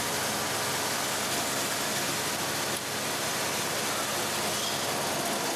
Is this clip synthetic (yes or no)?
no